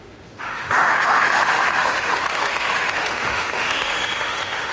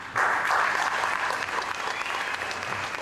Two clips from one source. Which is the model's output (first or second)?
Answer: first